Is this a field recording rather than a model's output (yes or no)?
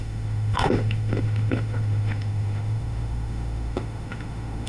no